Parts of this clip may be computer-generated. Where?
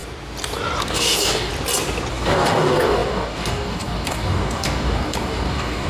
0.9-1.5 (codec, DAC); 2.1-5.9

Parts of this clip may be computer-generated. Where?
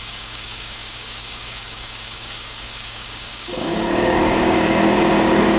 0.0-5.6 (codec, DAC)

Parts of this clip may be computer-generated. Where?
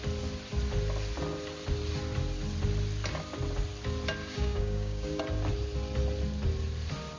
4.2-5.2 (codec, DAC)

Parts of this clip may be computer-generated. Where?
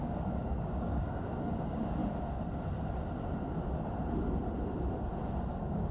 0.0-2.0 (codec, DAC); 5.5-5.9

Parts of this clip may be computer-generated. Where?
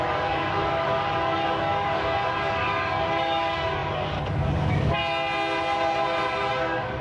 0.0-5.0 (codec, DAC); 6.5-7.0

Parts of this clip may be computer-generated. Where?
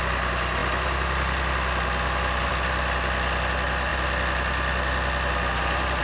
none